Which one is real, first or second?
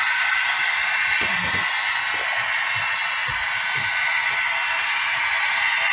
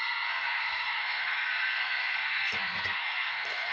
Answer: first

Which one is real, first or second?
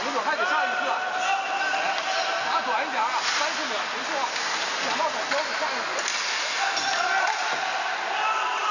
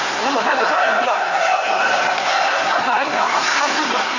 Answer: first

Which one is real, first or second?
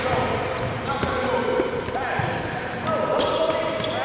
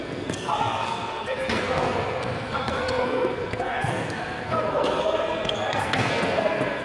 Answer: first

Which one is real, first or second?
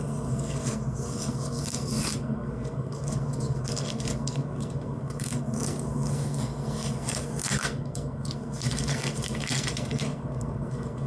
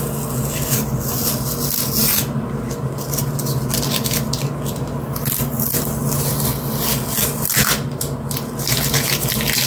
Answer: second